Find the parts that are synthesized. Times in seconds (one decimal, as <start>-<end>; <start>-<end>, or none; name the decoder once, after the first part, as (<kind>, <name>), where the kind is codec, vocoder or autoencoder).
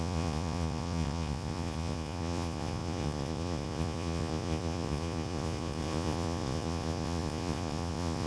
0.0-8.3 (vocoder, Vocos)